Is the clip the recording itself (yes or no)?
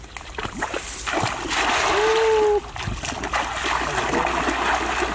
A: yes